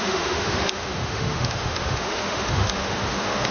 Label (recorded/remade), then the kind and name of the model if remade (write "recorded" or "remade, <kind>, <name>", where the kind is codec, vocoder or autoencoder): remade, autoencoder, DAC-VAE